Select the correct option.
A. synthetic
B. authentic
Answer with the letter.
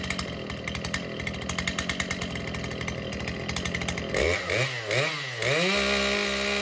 B